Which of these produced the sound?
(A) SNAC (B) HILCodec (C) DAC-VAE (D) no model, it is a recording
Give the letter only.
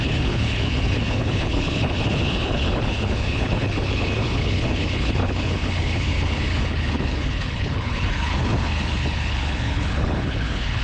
B